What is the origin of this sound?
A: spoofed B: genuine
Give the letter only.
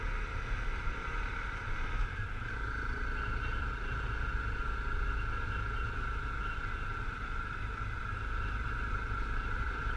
A